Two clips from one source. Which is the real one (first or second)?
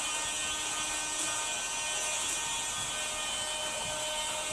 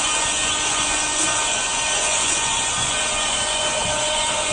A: first